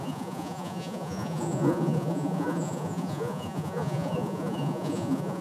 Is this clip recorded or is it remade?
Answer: remade